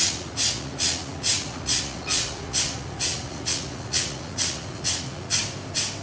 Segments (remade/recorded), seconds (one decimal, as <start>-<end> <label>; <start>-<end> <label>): 0.0-5.4 remade; 5.4-6.0 recorded